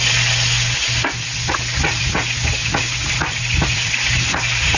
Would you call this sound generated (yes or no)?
no